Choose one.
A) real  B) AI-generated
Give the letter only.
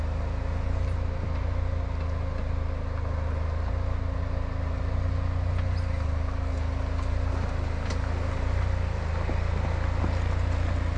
A